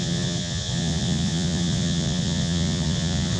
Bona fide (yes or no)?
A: no